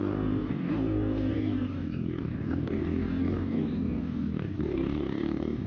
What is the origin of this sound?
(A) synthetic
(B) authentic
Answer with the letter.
A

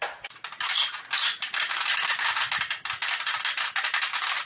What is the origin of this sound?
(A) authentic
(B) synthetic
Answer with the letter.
A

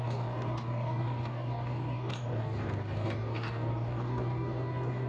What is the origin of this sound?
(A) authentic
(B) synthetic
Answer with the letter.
B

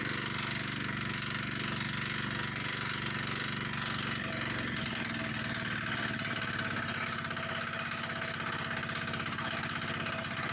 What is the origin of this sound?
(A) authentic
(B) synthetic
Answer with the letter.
A